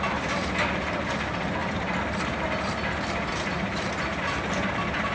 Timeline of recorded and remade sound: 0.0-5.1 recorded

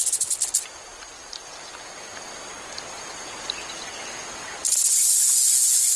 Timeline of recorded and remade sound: 0.0-6.0 recorded

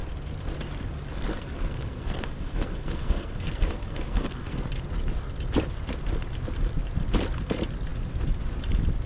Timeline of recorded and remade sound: 0.0-1.3 recorded; 1.3-4.6 remade; 4.6-9.1 recorded